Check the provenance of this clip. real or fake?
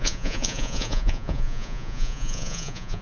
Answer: fake